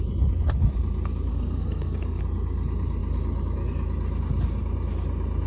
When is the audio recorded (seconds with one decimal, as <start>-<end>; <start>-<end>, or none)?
0.0-1.3; 2.2-5.5